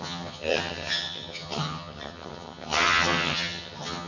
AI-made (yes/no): yes